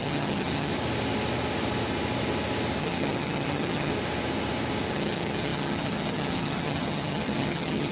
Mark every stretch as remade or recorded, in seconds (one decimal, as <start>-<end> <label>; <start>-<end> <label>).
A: 0.0-0.7 remade; 0.7-2.8 recorded; 2.8-3.9 remade; 3.9-4.9 recorded; 4.9-7.9 remade